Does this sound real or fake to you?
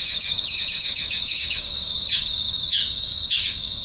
fake